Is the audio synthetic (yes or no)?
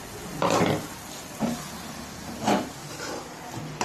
no